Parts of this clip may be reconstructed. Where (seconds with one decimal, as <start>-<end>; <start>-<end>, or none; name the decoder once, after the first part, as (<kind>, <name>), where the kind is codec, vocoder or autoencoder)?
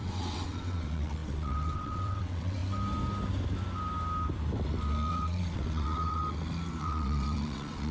0.0-2.6 (vocoder, WaveNeXt); 5.1-6.2; 6.8-7.9